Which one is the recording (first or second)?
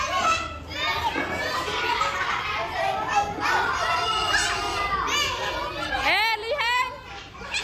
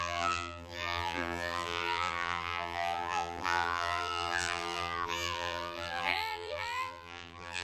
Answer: first